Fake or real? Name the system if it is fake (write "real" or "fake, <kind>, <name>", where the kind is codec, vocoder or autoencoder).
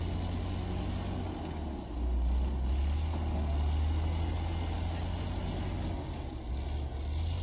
real